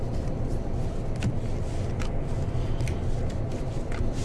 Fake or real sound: real